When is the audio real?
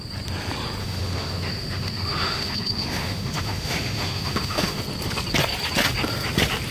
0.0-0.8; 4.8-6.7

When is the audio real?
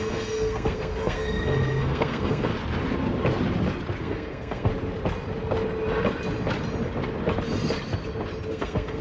2.5-4.0; 4.7-8.5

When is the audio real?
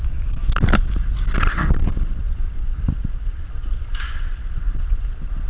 0.0-5.5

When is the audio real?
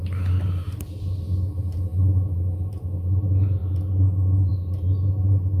0.0-5.6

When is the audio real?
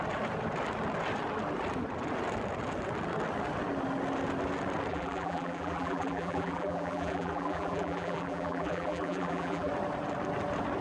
0.0-4.9; 9.7-10.8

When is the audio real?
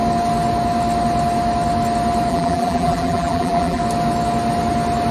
0.0-2.3; 3.8-5.1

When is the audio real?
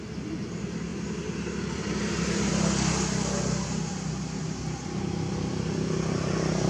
0.0-6.7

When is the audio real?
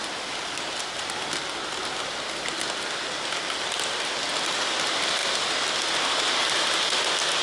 0.0-7.4